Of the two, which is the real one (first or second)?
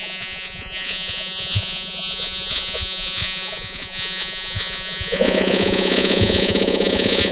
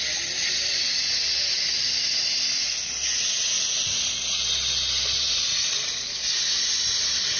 second